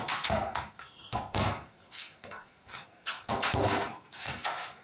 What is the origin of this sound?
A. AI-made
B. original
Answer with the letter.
A